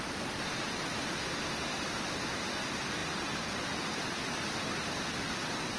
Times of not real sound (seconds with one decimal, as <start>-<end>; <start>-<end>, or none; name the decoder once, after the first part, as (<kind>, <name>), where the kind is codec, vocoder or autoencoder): none